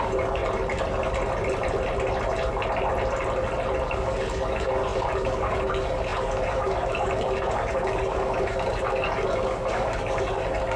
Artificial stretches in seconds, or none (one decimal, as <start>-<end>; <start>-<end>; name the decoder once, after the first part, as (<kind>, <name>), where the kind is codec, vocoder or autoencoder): 0.0-0.4 (codec, DAC); 3.8-10.8